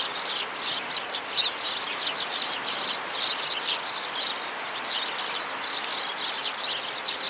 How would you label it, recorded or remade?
recorded